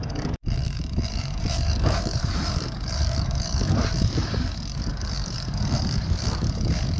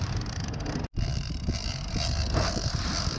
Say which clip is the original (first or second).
second